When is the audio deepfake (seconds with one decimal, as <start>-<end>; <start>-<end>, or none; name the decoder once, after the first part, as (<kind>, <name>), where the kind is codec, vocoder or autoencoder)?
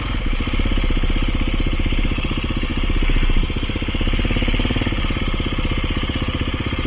none